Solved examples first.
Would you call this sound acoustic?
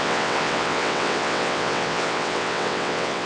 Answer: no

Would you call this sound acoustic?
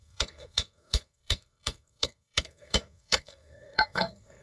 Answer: no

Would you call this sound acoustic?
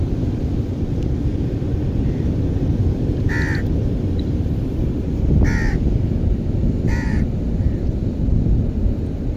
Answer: no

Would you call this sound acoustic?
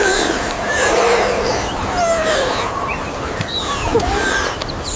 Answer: yes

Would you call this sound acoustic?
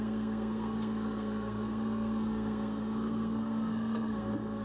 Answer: no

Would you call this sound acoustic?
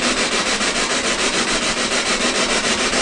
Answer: no